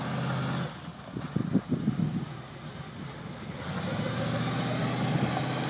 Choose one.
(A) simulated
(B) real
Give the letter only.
B